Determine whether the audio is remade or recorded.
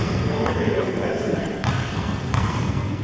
remade